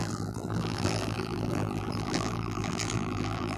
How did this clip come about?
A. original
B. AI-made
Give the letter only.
B